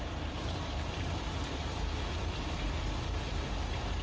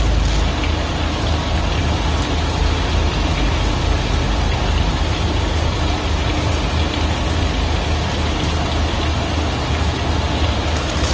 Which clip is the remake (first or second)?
first